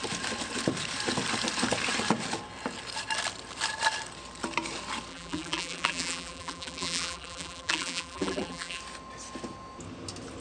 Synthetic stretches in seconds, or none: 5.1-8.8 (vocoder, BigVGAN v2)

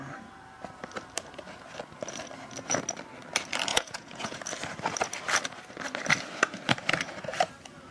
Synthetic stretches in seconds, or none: 3.7-4.4 (vocoder, Vocos)

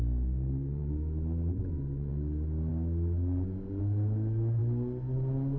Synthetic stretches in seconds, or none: none

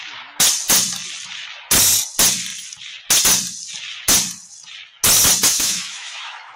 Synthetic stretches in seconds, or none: 5.5-6.6 (autoencoder, DAC-VAE)